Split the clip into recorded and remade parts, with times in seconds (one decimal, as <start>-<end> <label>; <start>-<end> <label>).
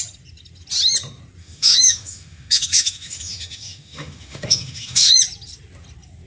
0.0-1.4 recorded; 1.4-5.2 remade; 5.2-6.3 recorded